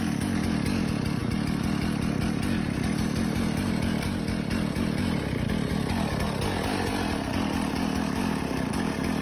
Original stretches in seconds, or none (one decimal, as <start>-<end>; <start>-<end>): 0.0-9.2